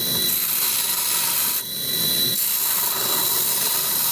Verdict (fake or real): real